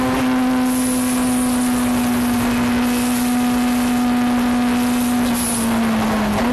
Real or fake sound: real